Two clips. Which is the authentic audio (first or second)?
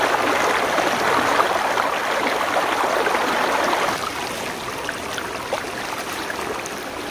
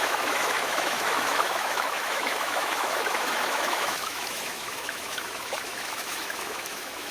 first